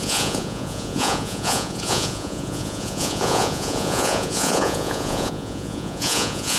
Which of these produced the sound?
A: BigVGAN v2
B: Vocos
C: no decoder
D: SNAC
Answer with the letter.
B